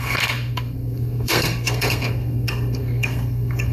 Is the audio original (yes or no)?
no